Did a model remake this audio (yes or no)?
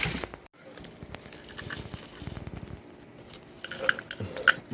no